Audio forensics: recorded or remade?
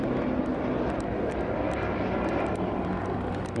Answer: recorded